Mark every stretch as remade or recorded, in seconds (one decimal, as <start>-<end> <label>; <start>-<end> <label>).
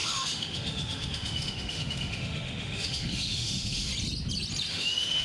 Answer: 0.0-3.9 remade; 3.9-4.7 recorded; 4.7-5.2 remade